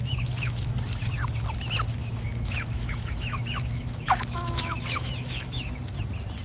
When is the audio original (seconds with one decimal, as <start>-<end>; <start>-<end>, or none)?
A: 0.7-2.0; 5.8-6.4